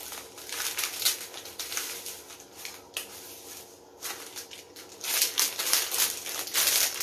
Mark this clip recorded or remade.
recorded